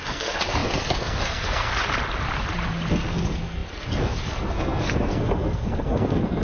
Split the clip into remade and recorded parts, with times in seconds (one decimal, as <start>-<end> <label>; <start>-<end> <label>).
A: 0.0-1.7 remade; 1.7-2.9 recorded; 2.9-6.4 remade